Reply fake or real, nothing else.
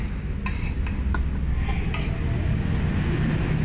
real